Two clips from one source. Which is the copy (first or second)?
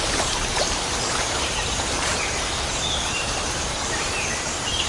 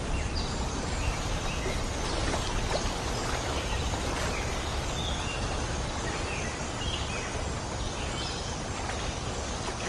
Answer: first